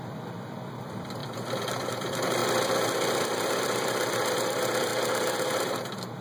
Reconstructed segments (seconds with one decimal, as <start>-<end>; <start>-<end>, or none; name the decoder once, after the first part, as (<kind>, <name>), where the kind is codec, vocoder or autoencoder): 0.0-2.4 (vocoder, BigVGAN v2); 3.2-4.9; 5.5-6.2